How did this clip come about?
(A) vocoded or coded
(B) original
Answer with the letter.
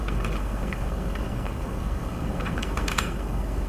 A